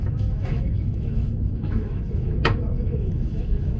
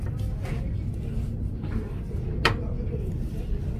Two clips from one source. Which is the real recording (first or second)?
second